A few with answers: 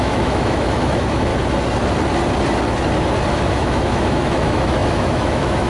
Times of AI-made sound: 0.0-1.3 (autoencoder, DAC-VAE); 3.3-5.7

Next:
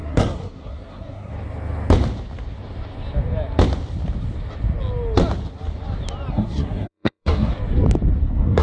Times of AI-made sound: 0.0-1.3 (codec, SNAC); 6.3-7.5; 8.2-8.6